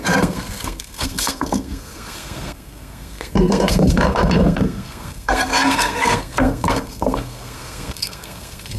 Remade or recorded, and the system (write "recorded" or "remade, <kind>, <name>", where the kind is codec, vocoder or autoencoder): remade, codec, SNAC